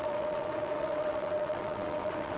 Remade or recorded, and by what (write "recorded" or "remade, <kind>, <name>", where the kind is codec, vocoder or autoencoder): remade, vocoder, WaveNeXt